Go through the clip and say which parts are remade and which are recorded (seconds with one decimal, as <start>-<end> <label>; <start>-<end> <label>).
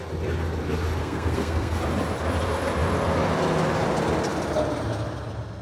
0.0-1.0 recorded; 1.0-1.8 remade; 1.8-5.6 recorded